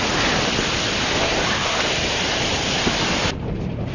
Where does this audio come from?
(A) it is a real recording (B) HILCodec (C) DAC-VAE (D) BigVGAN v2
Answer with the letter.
A